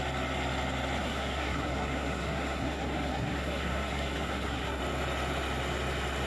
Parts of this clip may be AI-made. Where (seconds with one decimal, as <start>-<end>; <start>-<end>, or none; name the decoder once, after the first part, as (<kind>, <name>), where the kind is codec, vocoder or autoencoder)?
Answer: 1.0-4.8 (codec, SNAC)